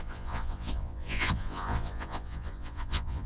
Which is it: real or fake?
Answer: fake